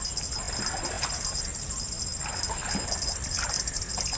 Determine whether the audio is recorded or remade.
recorded